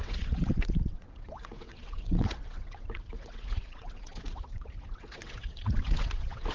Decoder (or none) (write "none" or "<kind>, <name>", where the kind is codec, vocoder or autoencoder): vocoder, WaveNeXt